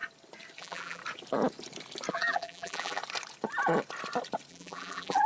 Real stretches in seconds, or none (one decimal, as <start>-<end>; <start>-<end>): 0.0-0.6; 1.0-2.1; 3.0-4.5